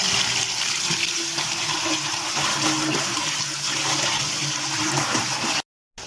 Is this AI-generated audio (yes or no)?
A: no